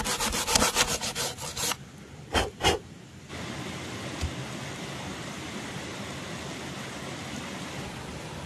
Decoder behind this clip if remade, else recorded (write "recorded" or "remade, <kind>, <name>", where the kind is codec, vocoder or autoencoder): recorded